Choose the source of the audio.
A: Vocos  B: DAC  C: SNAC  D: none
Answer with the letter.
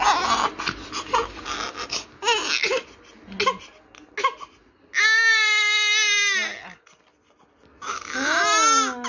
D